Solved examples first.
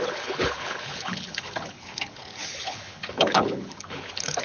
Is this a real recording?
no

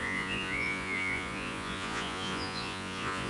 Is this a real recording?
no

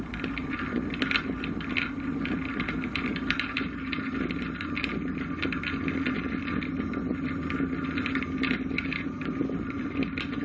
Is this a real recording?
yes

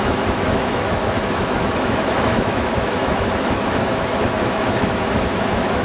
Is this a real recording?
no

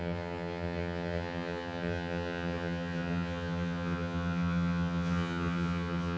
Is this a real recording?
no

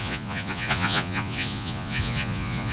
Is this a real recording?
no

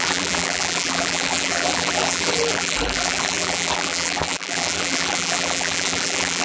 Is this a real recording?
no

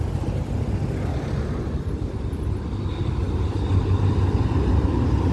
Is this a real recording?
yes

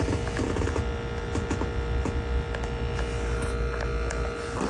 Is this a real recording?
yes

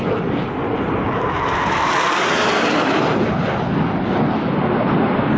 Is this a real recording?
yes